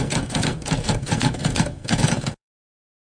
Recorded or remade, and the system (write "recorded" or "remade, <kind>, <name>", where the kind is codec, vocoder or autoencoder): remade, codec, SNAC